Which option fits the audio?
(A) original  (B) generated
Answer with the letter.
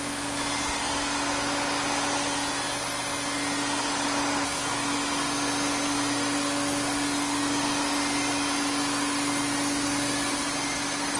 A